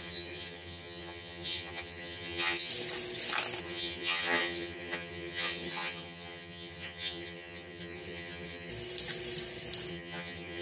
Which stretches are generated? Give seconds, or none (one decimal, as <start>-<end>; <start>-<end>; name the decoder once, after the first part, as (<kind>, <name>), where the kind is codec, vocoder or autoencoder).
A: 0.0-2.7 (vocoder, HiFi-GAN); 3.6-8.7; 9.9-10.6